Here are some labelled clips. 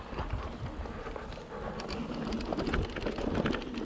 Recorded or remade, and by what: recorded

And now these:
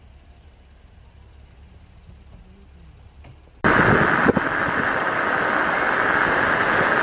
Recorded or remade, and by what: recorded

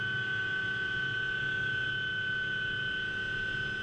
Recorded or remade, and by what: recorded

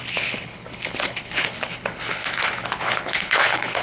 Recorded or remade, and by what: remade, codec, HILCodec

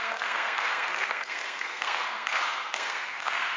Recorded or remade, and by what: remade, codec, SNAC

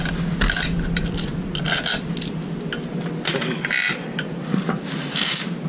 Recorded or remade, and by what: recorded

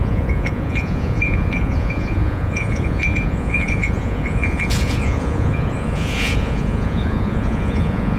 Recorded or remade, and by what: remade, vocoder, Vocos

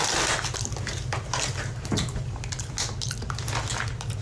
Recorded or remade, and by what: recorded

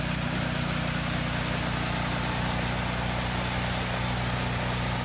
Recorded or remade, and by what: recorded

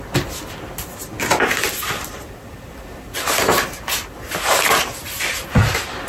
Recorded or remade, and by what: recorded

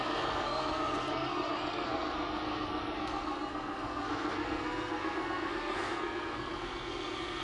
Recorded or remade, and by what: remade, codec, SNAC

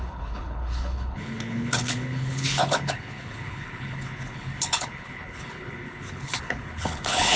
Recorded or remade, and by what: remade, codec, HILCodec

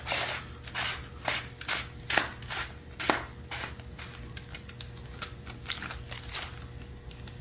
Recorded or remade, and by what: recorded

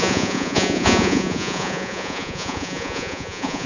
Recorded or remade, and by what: remade, vocoder, Vocos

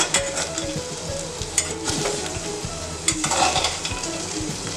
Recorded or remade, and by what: remade, vocoder, BigVGAN v2